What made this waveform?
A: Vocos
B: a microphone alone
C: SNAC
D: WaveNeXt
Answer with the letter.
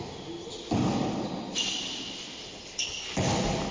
B